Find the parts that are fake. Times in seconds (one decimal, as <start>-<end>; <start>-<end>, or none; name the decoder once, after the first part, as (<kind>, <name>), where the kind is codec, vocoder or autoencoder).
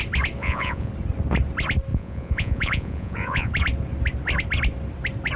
0.4-0.9 (vocoder, Vocos); 1.9-3.5